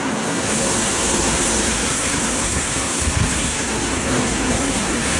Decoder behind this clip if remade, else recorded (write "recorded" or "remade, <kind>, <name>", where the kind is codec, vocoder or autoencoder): remade, codec, SNAC